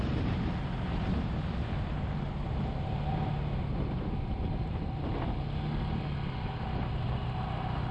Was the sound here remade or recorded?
recorded